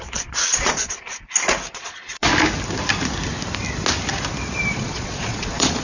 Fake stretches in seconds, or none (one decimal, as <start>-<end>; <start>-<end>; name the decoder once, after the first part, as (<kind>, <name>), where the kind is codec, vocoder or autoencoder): 0.0-1.1 (vocoder, Vocos); 1.7-2.3; 4.8-5.8